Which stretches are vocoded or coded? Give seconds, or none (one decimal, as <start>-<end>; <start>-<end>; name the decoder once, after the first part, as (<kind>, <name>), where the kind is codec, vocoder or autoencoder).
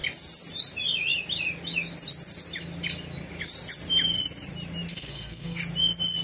4.9-5.6 (codec, SNAC)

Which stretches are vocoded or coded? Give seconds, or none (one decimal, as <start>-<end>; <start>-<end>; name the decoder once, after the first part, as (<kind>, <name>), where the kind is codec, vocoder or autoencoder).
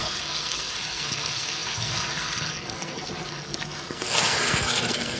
0.0-5.2 (codec, SNAC)